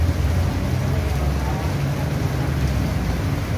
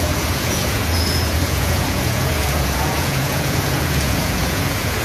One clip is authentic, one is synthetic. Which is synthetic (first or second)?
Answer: second